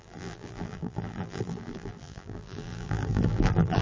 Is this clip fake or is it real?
fake